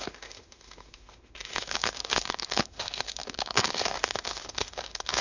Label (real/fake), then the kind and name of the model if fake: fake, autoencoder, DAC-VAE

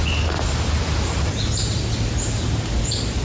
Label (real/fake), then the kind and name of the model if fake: real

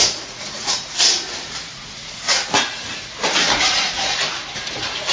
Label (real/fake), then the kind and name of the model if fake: fake, vocoder, Vocos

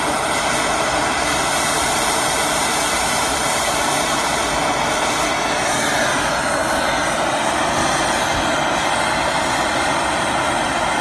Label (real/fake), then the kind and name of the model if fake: real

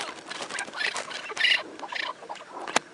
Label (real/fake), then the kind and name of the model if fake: real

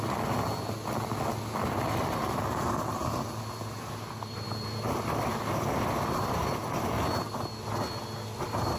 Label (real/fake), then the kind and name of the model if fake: real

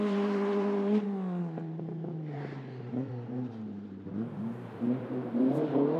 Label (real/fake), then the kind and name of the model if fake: fake, vocoder, BigVGAN v2